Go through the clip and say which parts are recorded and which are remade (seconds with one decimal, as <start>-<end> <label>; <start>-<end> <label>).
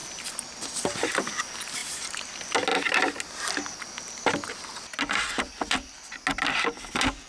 0.0-7.3 recorded